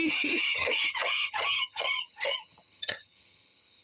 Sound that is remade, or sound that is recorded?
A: remade